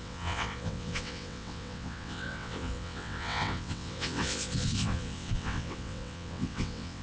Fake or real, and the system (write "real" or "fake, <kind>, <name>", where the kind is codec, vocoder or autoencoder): fake, vocoder, WaveNeXt